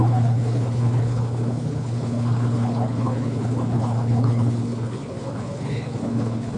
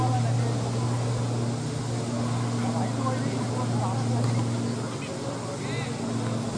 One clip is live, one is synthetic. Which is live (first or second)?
second